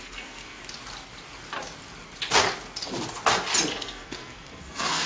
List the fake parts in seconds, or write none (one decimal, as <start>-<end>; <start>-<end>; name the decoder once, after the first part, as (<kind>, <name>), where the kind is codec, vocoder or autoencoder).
0.0-0.6 (codec, SNAC); 3.7-5.1